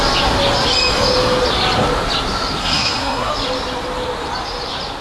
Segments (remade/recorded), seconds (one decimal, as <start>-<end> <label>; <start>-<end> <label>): 0.0-2.6 recorded; 2.6-3.3 remade; 3.3-5.0 recorded